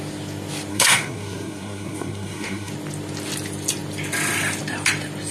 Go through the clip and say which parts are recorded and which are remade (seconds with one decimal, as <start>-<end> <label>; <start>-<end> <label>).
0.0-0.7 recorded; 0.7-2.7 remade; 2.7-5.3 recorded